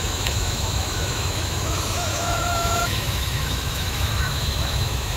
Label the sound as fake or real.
fake